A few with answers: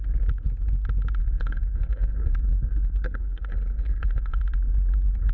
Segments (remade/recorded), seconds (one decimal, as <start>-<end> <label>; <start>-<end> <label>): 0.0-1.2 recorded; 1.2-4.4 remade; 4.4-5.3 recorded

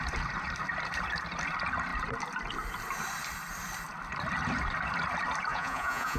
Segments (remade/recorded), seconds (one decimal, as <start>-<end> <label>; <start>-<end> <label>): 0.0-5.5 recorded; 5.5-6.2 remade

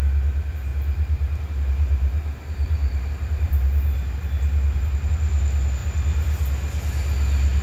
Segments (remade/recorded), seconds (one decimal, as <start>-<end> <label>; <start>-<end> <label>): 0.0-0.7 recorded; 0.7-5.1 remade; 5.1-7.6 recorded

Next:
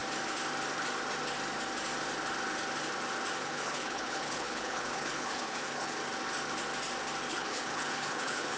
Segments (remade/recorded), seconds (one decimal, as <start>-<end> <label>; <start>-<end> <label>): 0.0-3.4 recorded; 3.4-6.0 remade; 6.0-7.3 recorded; 7.3-8.6 remade

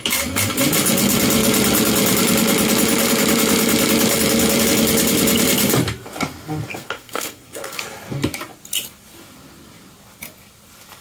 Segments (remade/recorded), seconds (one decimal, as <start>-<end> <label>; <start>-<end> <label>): 0.0-6.7 recorded; 6.7-7.8 remade; 7.8-11.0 recorded

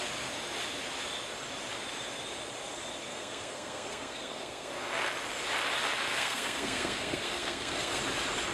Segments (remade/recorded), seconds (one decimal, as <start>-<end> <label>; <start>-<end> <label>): 0.0-3.1 recorded; 3.1-4.9 remade; 4.9-6.1 recorded; 6.1-8.0 remade; 8.0-8.5 recorded

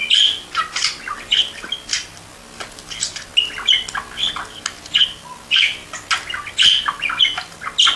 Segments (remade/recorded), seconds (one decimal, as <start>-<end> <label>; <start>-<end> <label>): 0.0-0.5 remade; 0.5-8.0 recorded